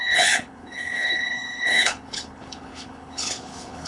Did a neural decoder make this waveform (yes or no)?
yes